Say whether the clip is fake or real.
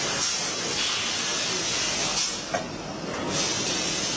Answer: real